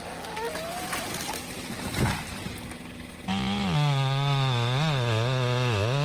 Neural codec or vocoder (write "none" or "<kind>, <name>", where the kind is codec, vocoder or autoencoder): none